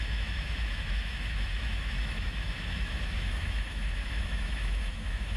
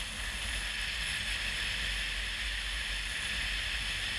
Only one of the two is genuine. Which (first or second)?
second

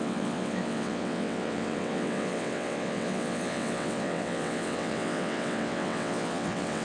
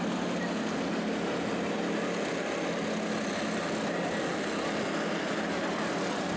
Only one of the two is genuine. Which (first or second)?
second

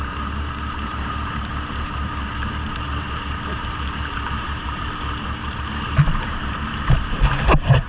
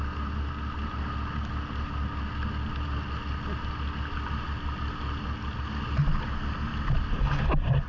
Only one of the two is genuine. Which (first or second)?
second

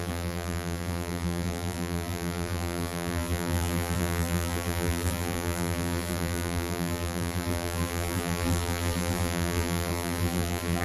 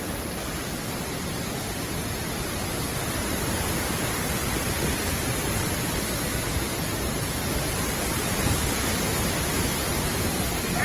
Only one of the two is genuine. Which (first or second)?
second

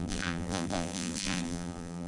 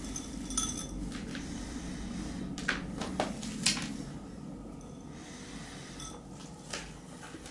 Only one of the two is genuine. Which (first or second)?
second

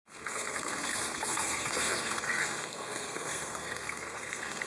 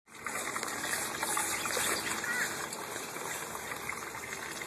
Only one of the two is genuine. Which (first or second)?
second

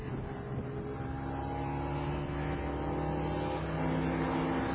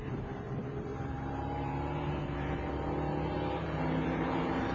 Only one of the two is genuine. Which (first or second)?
first